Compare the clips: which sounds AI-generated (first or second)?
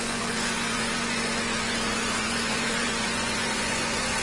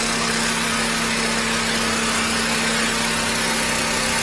first